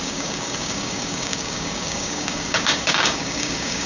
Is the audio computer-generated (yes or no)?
yes